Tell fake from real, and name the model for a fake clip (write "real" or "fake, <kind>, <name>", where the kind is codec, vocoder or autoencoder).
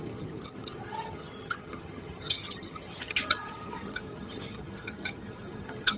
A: fake, vocoder, HiFi-GAN